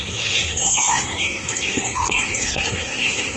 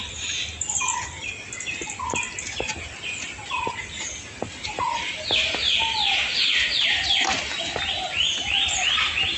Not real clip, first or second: first